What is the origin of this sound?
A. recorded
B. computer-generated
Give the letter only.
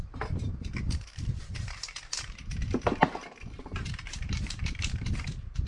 B